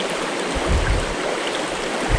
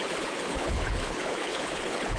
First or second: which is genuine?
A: first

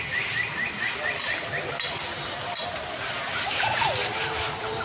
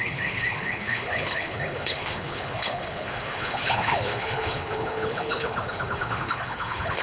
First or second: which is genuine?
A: first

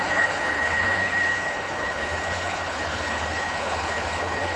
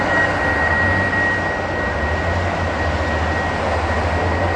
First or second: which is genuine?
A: second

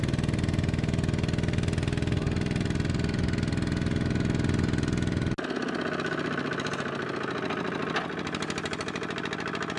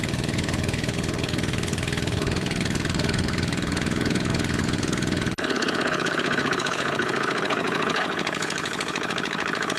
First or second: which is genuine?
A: first